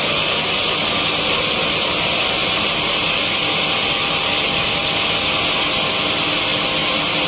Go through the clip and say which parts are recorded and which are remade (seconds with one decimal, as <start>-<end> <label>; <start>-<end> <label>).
0.0-7.3 recorded